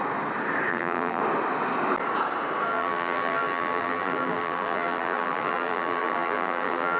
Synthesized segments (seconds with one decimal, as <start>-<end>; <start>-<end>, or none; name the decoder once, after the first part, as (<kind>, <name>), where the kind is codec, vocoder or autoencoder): 0.7-1.2 (vocoder, BigVGAN v2); 2.7-7.0